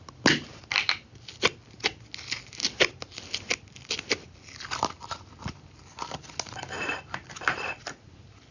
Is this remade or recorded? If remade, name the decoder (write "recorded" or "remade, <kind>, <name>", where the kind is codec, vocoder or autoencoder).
recorded